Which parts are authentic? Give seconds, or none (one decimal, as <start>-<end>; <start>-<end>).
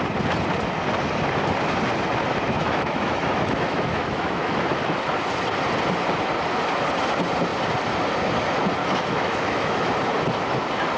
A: 0.0-2.6; 5.1-8.8; 9.9-11.0